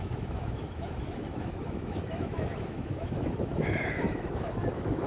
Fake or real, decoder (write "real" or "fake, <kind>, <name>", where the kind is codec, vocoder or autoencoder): fake, autoencoder, DAC-VAE